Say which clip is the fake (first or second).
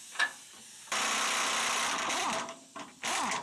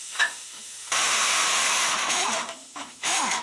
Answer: second